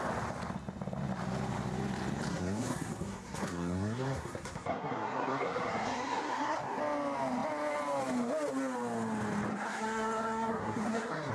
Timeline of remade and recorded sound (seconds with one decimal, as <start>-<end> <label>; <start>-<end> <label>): 0.0-2.3 recorded; 2.3-6.8 remade; 6.8-9.5 recorded; 9.5-11.3 remade